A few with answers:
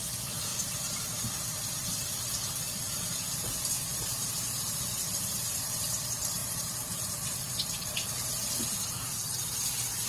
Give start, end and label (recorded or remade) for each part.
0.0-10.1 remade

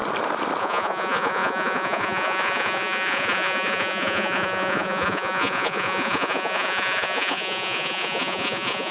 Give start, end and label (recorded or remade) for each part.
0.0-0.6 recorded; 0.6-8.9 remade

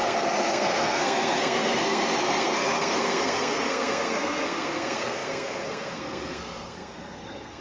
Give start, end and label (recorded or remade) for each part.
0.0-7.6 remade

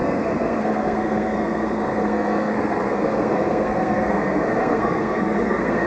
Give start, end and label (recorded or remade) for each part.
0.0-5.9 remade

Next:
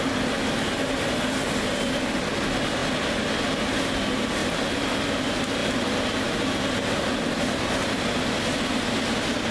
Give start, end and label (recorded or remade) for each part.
0.0-4.4 recorded; 4.4-5.0 remade; 5.0-9.5 recorded

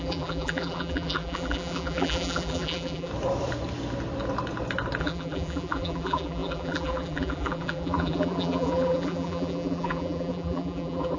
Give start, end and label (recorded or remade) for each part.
0.0-3.1 remade; 3.1-5.0 recorded; 5.0-11.2 remade

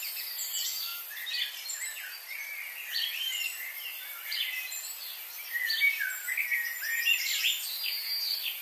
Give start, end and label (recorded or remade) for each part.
0.0-8.6 recorded

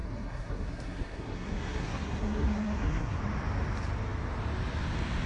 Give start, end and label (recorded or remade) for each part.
0.0-3.2 remade; 3.2-5.3 recorded